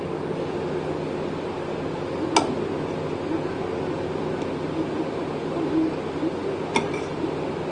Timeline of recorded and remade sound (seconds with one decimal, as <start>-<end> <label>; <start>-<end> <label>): 0.0-7.7 recorded